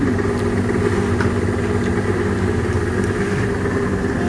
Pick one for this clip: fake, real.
real